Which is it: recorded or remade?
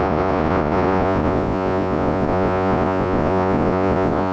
remade